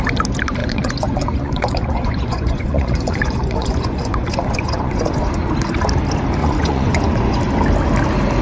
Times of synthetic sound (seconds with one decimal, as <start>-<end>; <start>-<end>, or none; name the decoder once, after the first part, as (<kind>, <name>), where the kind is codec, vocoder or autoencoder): 0.6-5.5 (vocoder, Vocos); 6.4-7.4